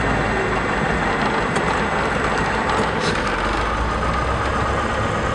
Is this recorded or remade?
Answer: recorded